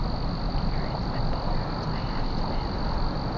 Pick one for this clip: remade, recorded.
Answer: remade